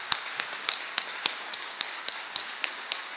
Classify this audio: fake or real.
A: fake